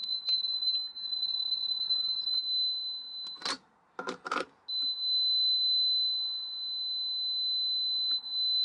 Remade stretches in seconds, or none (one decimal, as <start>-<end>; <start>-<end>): 0.0-2.4